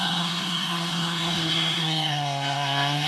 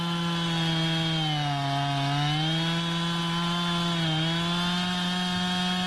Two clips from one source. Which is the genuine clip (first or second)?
second